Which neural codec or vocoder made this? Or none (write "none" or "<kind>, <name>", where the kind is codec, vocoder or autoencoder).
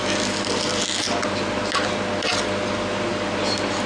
none